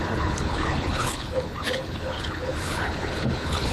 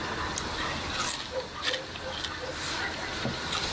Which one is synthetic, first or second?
first